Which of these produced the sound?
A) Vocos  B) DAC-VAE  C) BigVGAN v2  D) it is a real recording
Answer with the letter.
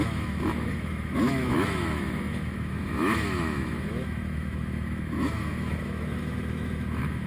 B